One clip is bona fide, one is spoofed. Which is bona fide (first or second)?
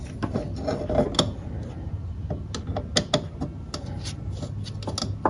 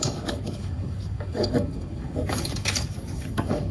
first